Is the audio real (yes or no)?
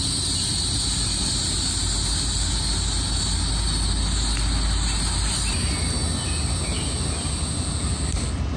yes